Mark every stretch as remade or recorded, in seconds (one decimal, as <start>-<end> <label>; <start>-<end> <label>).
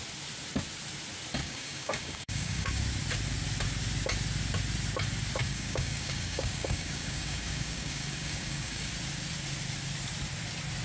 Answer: 0.0-1.4 recorded; 1.4-2.8 remade; 2.8-5.4 recorded; 5.4-8.9 remade; 8.9-10.8 recorded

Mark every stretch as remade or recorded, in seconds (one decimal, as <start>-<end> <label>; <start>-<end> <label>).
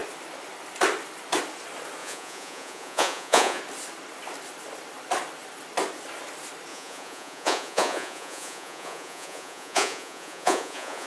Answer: 0.0-2.0 recorded; 2.0-3.6 remade; 3.6-6.7 recorded; 6.7-11.1 remade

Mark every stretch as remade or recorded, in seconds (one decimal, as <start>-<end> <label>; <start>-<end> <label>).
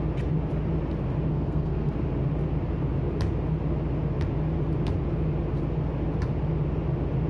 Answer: 0.0-1.3 recorded; 1.3-1.9 remade; 1.9-7.3 recorded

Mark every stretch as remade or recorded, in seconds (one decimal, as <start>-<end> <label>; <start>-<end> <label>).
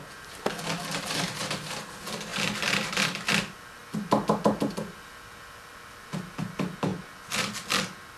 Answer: 0.0-8.2 recorded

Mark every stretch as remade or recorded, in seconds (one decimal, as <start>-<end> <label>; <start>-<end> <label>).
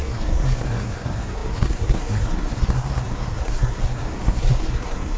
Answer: 0.0-5.2 remade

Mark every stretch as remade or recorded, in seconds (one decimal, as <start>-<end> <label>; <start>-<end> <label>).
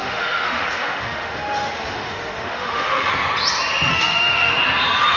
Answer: 0.0-3.1 remade; 3.1-3.9 recorded; 3.9-4.5 remade; 4.5-5.2 recorded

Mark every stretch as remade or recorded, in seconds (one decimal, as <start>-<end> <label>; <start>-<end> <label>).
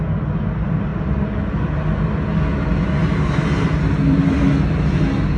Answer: 0.0-0.9 recorded; 0.9-1.5 remade; 1.5-3.0 recorded; 3.0-4.4 remade; 4.4-5.4 recorded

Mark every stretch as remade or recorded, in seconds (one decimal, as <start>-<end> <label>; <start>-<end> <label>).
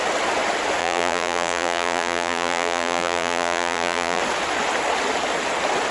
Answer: 0.0-0.8 recorded; 0.8-4.2 remade; 4.2-5.9 recorded